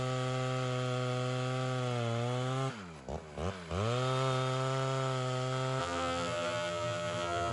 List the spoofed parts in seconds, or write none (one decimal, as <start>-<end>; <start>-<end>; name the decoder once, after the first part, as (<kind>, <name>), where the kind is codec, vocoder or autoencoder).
5.8-7.5 (vocoder, BigVGAN v2)